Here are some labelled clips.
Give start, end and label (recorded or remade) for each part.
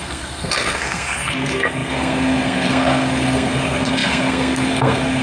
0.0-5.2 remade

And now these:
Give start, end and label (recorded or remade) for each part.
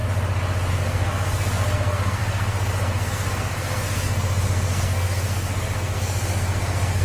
0.0-0.7 recorded; 0.7-7.0 remade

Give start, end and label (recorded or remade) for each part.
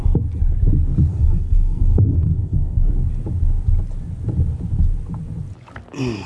0.0-1.1 recorded; 1.1-2.9 remade; 2.9-6.3 recorded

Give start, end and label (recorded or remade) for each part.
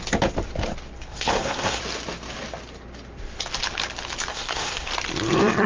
0.0-1.0 recorded; 1.0-1.8 remade; 1.8-4.3 recorded; 4.3-4.9 remade; 4.9-5.7 recorded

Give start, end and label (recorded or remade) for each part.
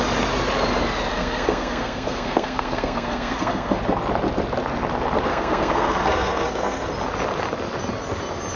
0.0-1.1 recorded; 1.1-3.8 remade; 3.8-5.3 recorded; 5.3-6.9 remade; 6.9-8.6 recorded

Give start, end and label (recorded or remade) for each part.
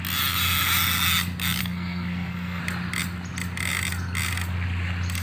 0.0-1.6 recorded; 1.6-2.6 remade; 2.6-5.2 recorded